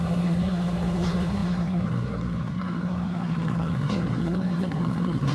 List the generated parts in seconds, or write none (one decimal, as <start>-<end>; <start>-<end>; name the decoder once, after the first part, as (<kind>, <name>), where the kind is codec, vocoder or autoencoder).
0.0-5.3 (codec, SNAC)